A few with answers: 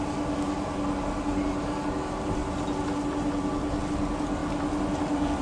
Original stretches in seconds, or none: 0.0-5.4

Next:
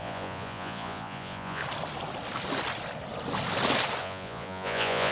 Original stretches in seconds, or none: 1.6-4.0

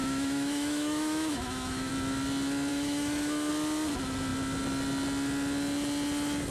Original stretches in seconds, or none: 1.9-2.7; 3.5-6.5